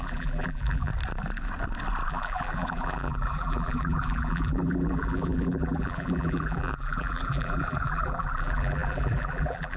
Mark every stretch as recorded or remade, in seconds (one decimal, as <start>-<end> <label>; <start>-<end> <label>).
0.0-0.9 remade; 0.9-2.1 recorded; 2.1-9.8 remade